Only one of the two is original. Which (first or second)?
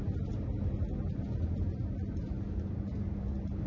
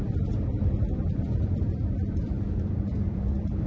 first